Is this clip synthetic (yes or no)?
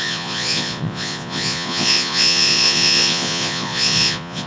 yes